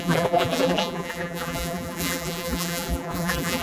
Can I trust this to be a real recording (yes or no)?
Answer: no